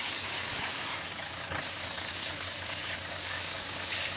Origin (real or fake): fake